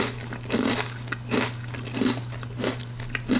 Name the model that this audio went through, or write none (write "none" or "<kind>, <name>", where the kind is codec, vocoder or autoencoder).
none